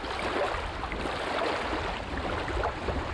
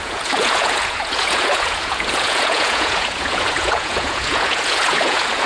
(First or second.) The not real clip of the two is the second